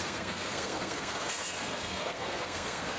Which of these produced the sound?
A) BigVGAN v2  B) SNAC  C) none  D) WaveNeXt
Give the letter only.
B